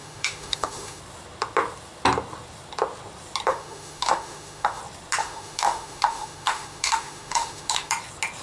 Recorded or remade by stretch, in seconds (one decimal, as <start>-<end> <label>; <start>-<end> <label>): 0.0-1.0 remade; 1.0-3.5 recorded; 3.5-4.8 remade; 4.8-5.2 recorded; 5.2-7.9 remade; 7.9-8.4 recorded